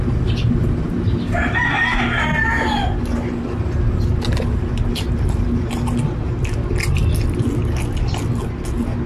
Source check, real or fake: real